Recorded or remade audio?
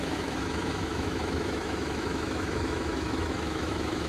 remade